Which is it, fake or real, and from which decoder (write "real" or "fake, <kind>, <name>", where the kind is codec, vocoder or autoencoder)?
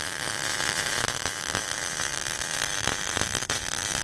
fake, vocoder, BigVGAN v2